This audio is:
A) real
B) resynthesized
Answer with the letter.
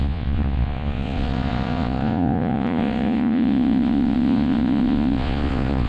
B